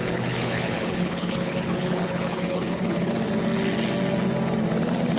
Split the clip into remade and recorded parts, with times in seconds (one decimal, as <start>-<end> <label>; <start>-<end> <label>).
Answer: 0.0-3.1 remade; 3.1-5.2 recorded